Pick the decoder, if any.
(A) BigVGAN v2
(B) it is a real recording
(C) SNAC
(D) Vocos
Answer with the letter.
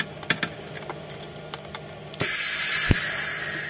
B